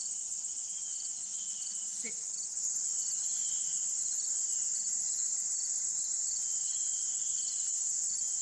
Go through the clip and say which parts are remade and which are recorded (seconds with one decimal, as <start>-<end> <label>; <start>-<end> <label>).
0.0-8.4 recorded